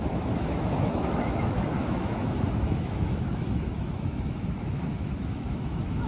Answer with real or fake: fake